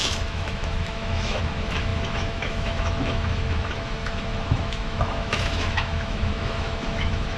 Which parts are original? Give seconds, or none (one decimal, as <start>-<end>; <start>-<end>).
none

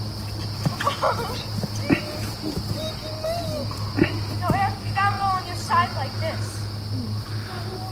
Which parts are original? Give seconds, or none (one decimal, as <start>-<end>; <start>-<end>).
0.0-4.8; 5.4-7.9